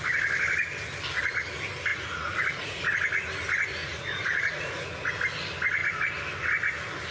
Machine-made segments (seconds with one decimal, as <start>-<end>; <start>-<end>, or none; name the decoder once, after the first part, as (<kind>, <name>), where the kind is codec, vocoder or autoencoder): 1.9-2.8 (vocoder, Vocos); 3.8-5.1